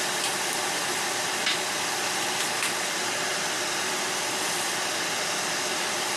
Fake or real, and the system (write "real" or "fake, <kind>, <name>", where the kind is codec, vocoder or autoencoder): real